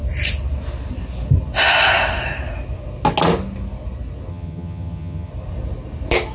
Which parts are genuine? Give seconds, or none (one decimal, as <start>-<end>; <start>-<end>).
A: 0.0-4.3; 5.3-6.3